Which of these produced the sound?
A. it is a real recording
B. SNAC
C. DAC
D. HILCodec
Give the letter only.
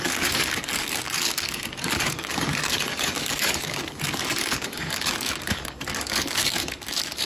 C